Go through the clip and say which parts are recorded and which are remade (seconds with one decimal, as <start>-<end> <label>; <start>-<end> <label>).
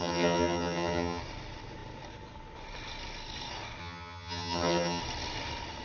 0.0-1.2 remade; 1.2-3.8 recorded; 3.8-5.0 remade; 5.0-5.8 recorded